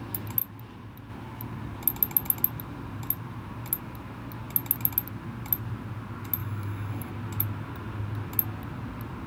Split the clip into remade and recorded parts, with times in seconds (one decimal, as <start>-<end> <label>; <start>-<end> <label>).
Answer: 0.0-6.4 recorded; 6.4-7.1 remade; 7.1-9.3 recorded